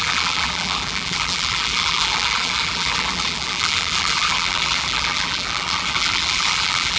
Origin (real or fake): fake